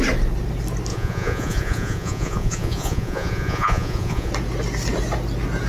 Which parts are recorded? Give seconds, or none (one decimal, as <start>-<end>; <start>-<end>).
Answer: 0.0-0.9; 4.3-5.7